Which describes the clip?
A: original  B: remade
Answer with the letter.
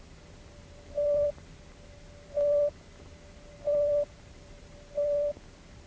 A